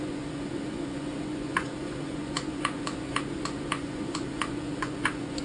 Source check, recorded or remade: remade